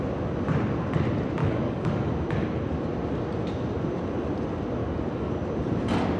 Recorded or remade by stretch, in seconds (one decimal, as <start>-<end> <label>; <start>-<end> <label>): 0.0-1.4 recorded; 1.4-2.1 remade; 2.1-4.8 recorded; 4.8-5.3 remade; 5.3-6.2 recorded